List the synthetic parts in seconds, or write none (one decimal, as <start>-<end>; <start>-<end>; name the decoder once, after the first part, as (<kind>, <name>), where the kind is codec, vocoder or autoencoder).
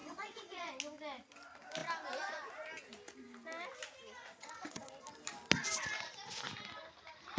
0.0-0.7 (vocoder, WaveNeXt); 4.2-4.9